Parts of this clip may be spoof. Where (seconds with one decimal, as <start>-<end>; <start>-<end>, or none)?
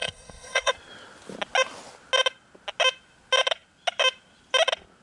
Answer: 0.0-0.7